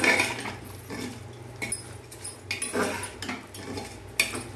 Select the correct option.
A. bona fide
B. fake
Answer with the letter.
A